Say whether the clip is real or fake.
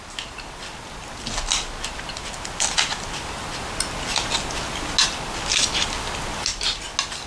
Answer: real